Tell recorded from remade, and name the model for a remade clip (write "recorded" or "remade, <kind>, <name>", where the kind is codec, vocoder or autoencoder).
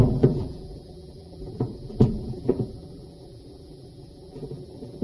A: remade, vocoder, BigVGAN v2